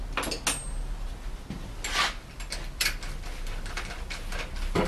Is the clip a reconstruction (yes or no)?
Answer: no